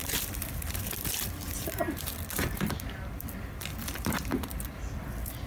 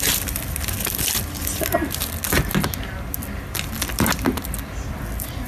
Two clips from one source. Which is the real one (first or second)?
second